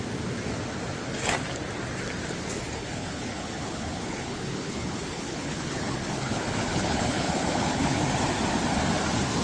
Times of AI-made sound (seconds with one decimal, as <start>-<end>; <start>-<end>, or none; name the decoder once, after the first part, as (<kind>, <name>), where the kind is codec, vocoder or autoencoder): 2.8-8.0 (codec, HILCodec)